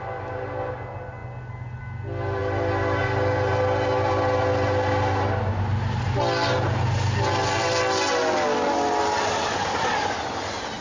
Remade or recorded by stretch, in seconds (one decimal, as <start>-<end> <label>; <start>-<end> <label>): 0.0-10.8 recorded